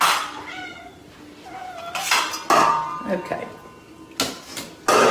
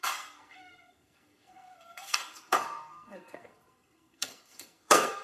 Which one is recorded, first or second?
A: first